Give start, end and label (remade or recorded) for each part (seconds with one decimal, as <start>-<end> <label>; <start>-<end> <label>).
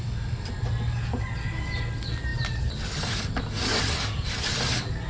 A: 0.0-5.1 recorded